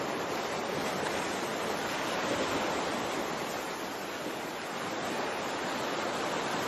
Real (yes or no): yes